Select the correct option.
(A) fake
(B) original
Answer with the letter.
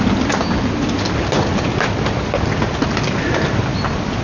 B